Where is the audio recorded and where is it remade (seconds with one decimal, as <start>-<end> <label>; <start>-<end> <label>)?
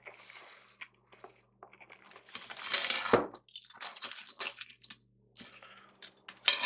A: 0.0-6.7 recorded